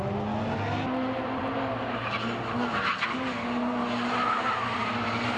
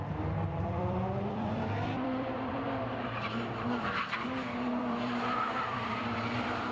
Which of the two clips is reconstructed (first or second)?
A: second